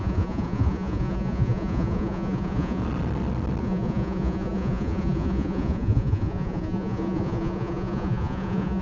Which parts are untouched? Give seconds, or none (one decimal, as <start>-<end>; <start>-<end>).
2.8-3.6